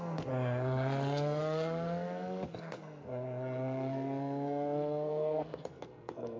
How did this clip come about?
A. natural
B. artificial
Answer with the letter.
B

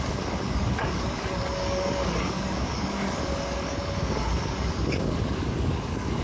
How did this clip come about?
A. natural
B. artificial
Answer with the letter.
B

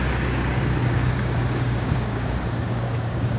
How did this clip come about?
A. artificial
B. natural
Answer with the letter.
A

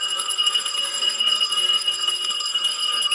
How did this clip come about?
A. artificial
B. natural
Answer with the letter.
A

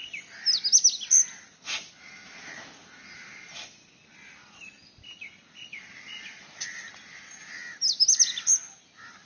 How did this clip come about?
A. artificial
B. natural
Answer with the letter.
B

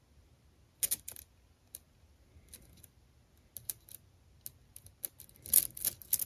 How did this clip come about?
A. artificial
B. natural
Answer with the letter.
B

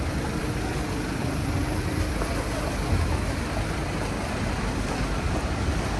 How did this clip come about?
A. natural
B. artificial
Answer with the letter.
A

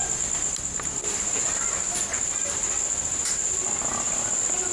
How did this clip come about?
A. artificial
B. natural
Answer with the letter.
B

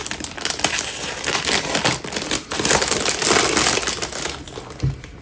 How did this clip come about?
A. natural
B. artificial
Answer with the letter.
A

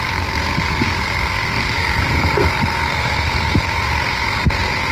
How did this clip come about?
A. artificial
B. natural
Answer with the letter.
A